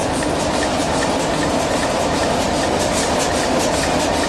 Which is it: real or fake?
real